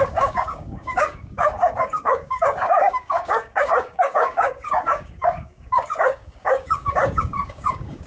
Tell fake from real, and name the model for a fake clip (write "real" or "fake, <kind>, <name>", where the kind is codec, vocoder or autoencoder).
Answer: fake, codec, DAC